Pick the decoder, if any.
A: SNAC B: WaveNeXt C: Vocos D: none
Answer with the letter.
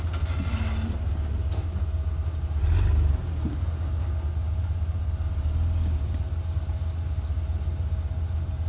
D